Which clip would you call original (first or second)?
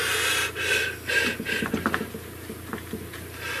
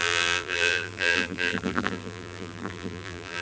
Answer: first